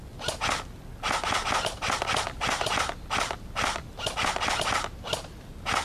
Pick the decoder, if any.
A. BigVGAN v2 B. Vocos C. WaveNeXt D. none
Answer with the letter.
D